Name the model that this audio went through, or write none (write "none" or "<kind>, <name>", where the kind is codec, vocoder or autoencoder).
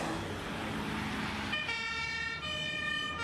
none